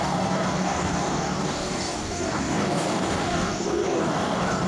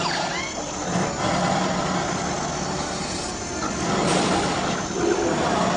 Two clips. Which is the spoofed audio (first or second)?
first